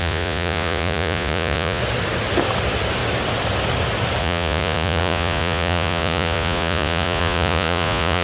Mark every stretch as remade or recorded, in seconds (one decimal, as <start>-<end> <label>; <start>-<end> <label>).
0.0-1.8 remade; 1.8-4.2 recorded; 4.2-8.2 remade